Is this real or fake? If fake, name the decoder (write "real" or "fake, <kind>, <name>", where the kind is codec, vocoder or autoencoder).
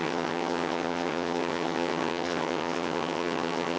fake, vocoder, HiFi-GAN